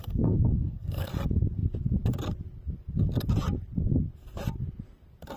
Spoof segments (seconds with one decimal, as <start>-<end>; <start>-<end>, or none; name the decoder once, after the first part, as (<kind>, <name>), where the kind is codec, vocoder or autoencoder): 0.0-1.1 (codec, SNAC)